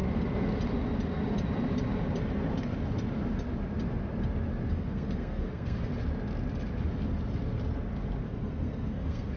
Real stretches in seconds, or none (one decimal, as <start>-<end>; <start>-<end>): 0.0-4.7; 5.9-8.2

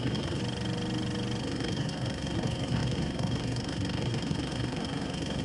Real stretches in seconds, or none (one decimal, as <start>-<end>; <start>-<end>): 0.4-1.4

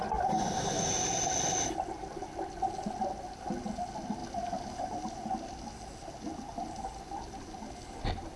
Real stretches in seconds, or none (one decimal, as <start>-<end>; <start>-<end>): 0.0-8.4